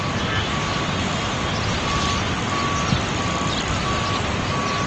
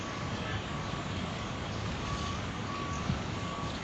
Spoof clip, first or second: second